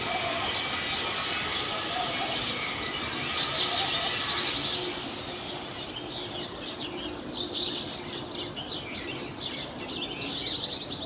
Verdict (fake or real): real